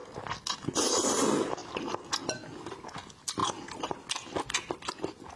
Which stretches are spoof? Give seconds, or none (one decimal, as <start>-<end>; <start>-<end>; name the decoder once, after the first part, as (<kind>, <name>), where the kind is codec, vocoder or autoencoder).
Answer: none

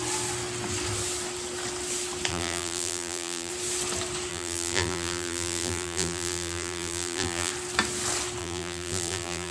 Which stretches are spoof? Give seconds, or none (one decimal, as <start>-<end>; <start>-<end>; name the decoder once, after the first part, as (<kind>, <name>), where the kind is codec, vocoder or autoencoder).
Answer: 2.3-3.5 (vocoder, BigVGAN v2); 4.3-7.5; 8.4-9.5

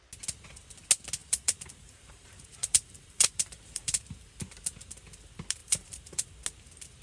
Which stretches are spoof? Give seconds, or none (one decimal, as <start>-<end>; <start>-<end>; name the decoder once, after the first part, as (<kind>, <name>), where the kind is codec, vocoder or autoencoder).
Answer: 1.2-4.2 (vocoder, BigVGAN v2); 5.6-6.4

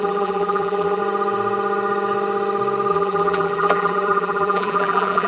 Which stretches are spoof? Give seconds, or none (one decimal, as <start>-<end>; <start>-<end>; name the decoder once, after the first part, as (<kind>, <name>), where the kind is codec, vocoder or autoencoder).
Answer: 0.0-1.0 (vocoder, BigVGAN v2); 2.9-5.3

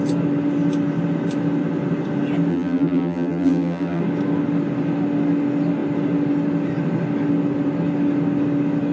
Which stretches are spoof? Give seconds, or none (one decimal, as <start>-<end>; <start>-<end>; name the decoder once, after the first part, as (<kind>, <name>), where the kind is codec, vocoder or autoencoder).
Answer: 2.5-4.0 (vocoder, BigVGAN v2)

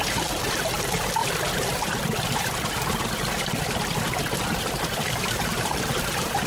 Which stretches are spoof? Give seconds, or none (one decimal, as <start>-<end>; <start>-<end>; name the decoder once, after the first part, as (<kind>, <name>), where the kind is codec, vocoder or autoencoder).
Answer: 0.0-1.2 (vocoder, BigVGAN v2); 5.1-6.5

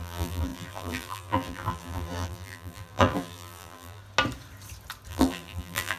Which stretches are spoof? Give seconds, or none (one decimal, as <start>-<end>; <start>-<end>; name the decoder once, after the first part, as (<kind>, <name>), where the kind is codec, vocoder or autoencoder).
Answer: 0.0-4.0 (vocoder, BigVGAN v2); 5.1-6.0